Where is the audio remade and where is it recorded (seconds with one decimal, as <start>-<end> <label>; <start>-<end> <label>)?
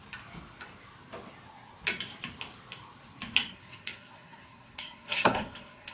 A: 0.0-3.5 recorded; 3.5-5.9 remade